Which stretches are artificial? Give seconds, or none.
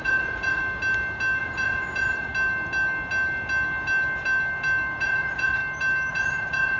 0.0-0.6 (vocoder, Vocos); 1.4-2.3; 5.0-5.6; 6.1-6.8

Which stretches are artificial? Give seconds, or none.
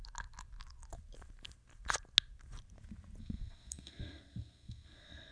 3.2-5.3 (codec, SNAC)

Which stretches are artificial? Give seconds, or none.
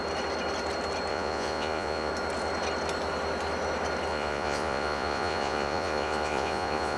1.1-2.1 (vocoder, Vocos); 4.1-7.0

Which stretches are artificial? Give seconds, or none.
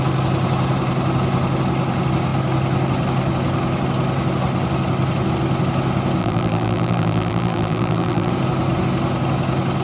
6.2-8.3 (vocoder, BigVGAN v2)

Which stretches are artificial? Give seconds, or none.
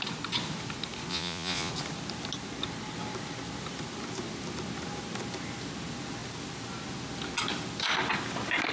1.1-1.7 (vocoder, Vocos)